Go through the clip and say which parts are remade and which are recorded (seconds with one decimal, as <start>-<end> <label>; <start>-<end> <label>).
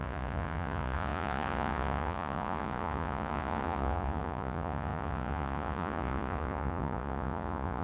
0.0-7.8 remade